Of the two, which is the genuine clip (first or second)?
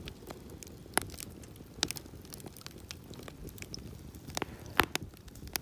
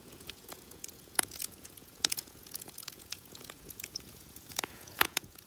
first